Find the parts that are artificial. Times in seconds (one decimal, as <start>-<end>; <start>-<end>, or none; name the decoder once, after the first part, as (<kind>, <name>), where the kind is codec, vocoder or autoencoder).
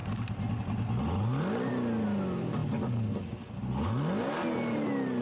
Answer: none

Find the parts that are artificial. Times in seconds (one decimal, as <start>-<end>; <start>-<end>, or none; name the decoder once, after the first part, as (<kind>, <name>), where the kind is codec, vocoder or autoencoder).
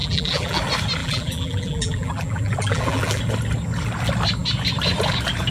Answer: 0.0-0.6 (vocoder, BigVGAN v2); 1.0-3.2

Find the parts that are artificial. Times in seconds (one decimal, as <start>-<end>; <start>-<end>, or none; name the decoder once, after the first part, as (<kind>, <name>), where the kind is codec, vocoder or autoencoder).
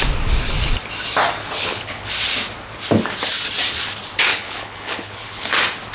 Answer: 1.4-2.1 (codec, HILCodec); 4.3-5.5